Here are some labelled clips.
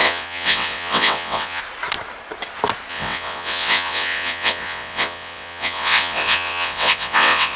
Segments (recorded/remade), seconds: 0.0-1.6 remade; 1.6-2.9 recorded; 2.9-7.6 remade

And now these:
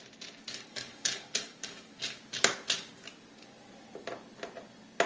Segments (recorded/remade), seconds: 0.0-0.5 recorded; 0.5-2.2 remade; 2.2-5.1 recorded

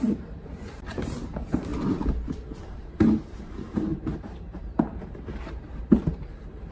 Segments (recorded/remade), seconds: 0.0-1.7 remade; 1.7-2.7 recorded; 2.7-6.7 remade